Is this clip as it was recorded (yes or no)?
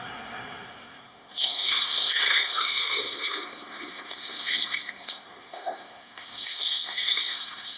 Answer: no